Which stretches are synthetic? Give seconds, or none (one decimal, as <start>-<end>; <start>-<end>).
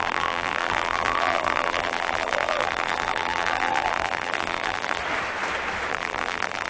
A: 0.0-5.0; 5.9-6.7